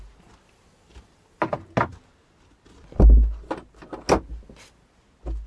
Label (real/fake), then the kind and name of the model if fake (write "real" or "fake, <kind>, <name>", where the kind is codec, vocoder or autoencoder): real